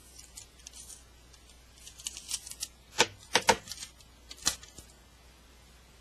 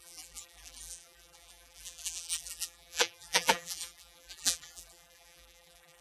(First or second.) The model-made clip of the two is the second